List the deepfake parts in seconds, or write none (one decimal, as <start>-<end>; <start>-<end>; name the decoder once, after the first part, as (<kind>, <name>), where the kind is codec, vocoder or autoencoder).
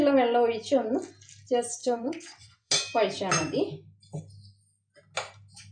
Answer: 1.8-2.7 (vocoder, WaveNeXt)